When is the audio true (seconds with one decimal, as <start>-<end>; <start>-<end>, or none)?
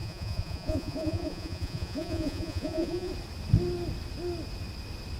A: 3.1-5.2